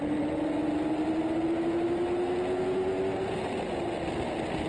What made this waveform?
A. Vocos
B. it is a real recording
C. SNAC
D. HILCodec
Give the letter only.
B